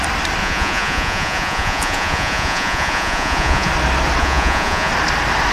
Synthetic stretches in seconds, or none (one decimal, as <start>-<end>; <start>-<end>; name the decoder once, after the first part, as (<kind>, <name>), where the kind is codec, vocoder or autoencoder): 0.4-3.7 (vocoder, Vocos); 4.2-4.9